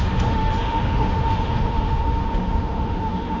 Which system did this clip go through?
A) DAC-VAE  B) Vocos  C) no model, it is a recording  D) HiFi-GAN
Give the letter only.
A